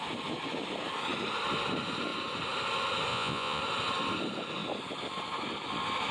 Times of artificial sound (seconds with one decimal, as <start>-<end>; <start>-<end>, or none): 3.1-3.6